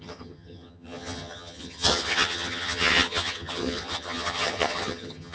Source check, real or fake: fake